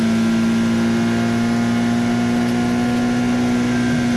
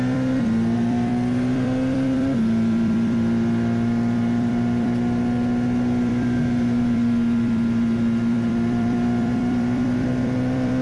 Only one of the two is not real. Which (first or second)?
second